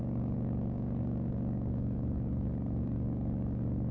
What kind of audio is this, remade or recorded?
remade